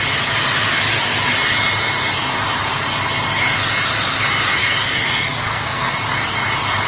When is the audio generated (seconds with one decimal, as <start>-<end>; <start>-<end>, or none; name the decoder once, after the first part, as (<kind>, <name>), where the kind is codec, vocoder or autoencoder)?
4.6-5.9 (codec, SNAC)